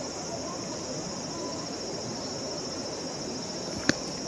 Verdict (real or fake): real